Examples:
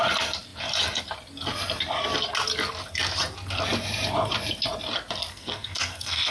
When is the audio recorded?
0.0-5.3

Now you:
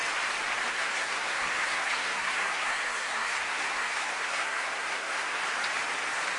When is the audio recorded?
0.0-0.7; 5.4-6.4

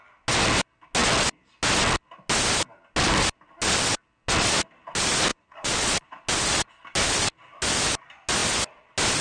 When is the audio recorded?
0.0-5.3; 6.2-9.2

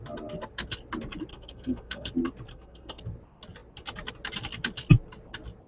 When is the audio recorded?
0.0-1.3; 2.1-2.5; 3.0-5.7

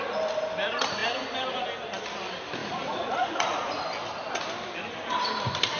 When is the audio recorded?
0.0-2.6; 3.9-5.8

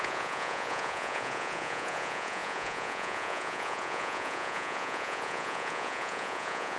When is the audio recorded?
none

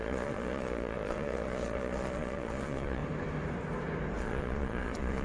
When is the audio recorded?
3.0-4.2